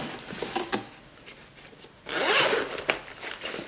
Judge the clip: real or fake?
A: real